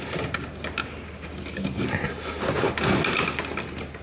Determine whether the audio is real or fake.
real